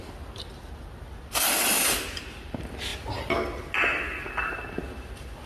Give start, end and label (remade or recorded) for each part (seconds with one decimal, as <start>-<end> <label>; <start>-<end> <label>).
0.0-5.5 recorded

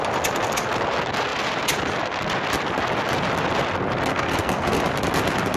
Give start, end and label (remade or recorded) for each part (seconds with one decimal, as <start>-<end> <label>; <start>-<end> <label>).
0.0-4.1 recorded; 4.1-4.8 remade; 4.8-5.6 recorded

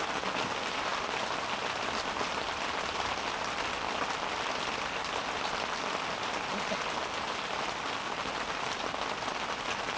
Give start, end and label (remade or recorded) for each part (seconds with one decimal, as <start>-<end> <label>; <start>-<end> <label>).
0.0-10.0 recorded

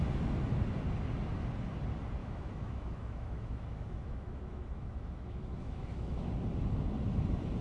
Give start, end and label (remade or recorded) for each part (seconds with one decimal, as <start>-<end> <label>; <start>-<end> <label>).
0.0-2.2 recorded; 2.2-6.3 remade; 6.3-7.6 recorded

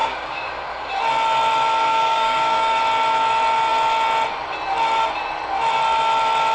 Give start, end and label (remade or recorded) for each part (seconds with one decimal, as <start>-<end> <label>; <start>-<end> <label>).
0.0-0.9 remade; 0.9-1.9 recorded; 1.9-2.8 remade; 2.8-6.5 recorded

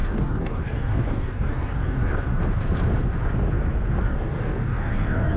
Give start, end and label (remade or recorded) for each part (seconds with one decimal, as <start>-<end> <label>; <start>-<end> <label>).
0.0-2.4 remade; 2.4-4.0 recorded; 4.0-5.4 remade